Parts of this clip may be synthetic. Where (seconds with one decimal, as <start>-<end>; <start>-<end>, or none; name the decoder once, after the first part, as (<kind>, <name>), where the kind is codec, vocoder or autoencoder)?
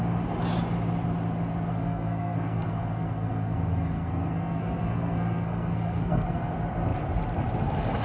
1.7-6.5 (codec, SNAC)